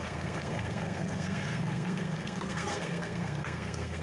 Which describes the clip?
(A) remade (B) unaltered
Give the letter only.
A